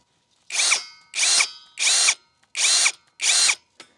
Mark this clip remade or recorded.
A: recorded